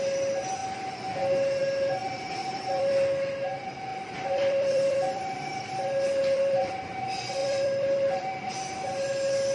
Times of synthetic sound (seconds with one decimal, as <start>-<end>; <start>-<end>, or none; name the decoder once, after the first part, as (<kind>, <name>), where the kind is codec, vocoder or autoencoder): 2.0-2.9 (vocoder, BigVGAN v2); 3.9-6.7; 7.4-8.5